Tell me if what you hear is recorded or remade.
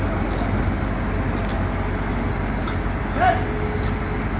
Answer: recorded